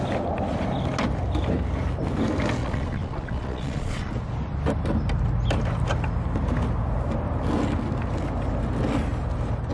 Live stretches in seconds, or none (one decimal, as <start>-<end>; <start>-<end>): 0.0-2.6; 4.1-9.7